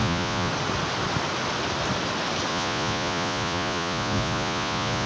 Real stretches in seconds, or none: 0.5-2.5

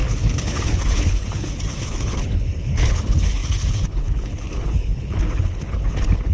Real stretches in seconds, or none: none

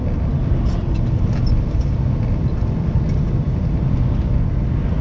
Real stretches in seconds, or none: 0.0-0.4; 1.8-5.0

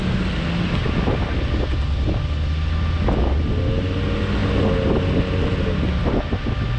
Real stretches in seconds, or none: 0.0-6.8

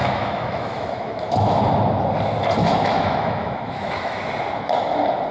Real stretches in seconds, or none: 1.6-2.6; 4.2-5.3

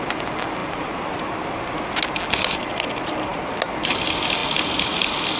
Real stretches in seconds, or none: 0.0-5.4

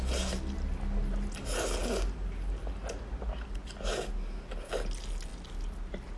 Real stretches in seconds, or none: 0.0-6.2